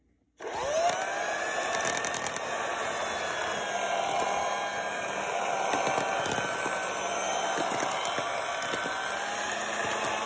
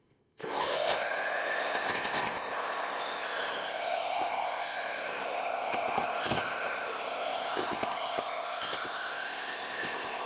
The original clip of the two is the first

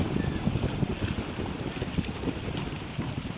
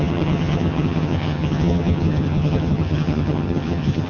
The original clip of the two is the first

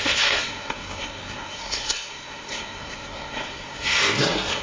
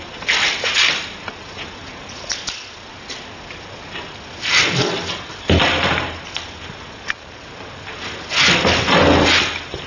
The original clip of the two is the second